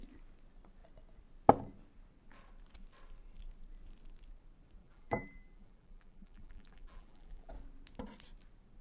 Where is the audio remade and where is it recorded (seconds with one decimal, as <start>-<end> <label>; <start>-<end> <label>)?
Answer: 0.0-4.8 recorded; 4.8-7.5 remade; 7.5-8.8 recorded

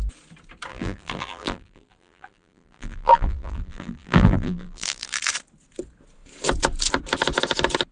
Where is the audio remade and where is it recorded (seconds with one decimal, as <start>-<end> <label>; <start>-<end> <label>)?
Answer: 0.0-0.7 recorded; 0.7-5.2 remade; 5.2-7.9 recorded

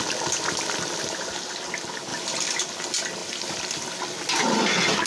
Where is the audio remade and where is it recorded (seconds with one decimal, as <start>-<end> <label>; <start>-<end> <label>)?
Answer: 0.0-2.1 recorded; 2.1-2.6 remade; 2.6-3.2 recorded; 3.2-4.0 remade; 4.0-5.1 recorded

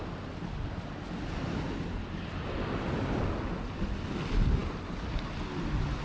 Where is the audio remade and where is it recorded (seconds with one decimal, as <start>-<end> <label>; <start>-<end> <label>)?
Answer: 0.0-6.0 recorded

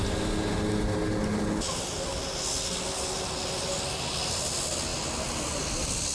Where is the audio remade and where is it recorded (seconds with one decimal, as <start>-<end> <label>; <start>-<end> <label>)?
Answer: 0.0-6.1 recorded

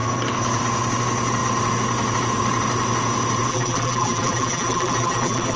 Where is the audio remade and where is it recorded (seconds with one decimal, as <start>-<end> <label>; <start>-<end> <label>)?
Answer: 0.0-3.5 recorded; 3.5-5.6 remade